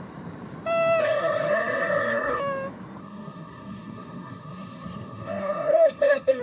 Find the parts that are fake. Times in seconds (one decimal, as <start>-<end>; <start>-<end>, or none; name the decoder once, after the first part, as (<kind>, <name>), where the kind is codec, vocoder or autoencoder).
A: 1.0-2.4 (codec, SNAC); 3.0-6.4